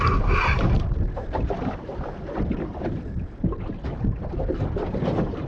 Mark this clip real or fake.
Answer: real